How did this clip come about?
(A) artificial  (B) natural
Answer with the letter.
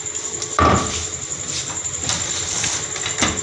B